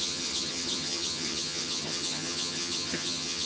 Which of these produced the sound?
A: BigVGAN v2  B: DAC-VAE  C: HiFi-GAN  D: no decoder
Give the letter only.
C